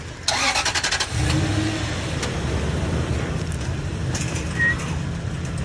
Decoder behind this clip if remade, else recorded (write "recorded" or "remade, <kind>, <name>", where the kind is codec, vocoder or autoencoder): recorded